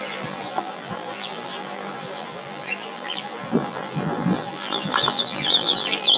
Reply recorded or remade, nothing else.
remade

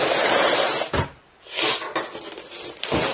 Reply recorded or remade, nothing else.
recorded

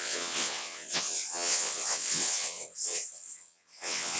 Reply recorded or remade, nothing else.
remade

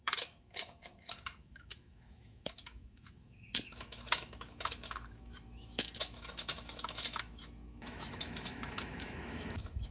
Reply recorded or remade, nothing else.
remade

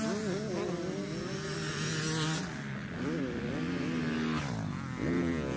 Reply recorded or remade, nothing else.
recorded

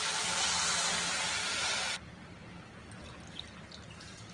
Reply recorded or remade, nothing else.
recorded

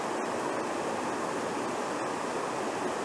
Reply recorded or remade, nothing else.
recorded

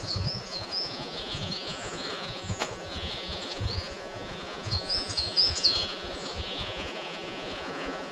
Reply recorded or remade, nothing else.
remade